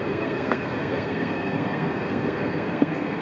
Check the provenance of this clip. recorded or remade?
remade